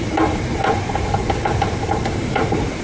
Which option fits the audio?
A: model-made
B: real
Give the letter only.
A